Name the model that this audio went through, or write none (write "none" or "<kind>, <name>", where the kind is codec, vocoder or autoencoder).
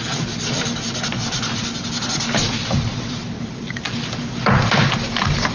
vocoder, BigVGAN v2